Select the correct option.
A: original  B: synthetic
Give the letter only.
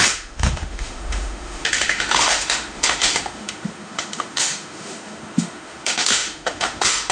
B